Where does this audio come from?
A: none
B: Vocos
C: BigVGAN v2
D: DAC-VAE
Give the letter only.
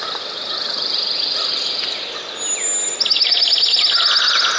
A